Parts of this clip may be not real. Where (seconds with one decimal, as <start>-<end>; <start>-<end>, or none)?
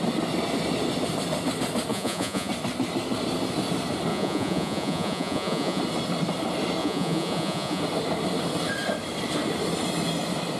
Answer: 1.9-2.5; 4.1-5.8; 6.8-7.8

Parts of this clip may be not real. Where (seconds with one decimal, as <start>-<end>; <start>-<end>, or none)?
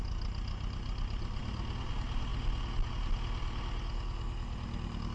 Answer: none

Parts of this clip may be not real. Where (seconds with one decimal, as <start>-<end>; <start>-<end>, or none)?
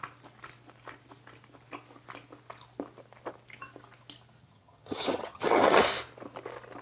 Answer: 4.4-5.8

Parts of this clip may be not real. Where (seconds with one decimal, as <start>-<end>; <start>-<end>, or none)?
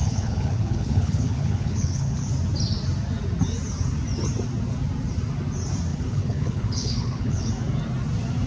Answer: 0.0-2.3; 5.9-7.5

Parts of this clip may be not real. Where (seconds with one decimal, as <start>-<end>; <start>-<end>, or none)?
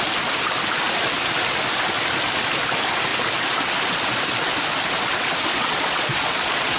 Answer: 5.5-6.8